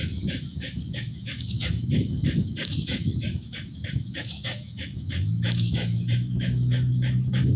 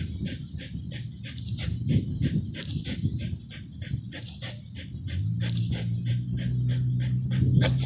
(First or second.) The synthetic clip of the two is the first